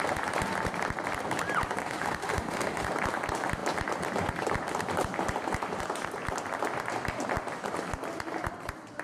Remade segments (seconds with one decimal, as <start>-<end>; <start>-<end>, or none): 1.8-2.9